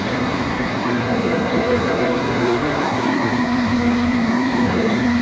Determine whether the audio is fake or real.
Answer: fake